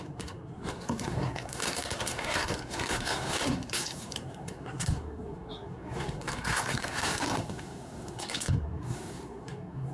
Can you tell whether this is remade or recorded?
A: remade